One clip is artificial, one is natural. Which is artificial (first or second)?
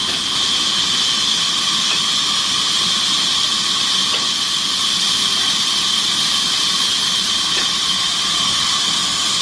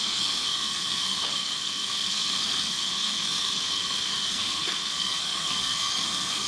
second